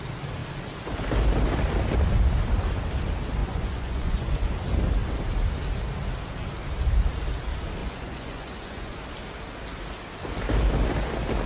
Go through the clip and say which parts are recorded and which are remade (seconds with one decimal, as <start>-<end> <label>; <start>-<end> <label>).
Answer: 0.0-3.4 recorded; 3.4-4.5 remade; 4.5-7.8 recorded; 7.8-9.0 remade; 9.0-11.5 recorded